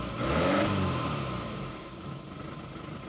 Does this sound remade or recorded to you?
recorded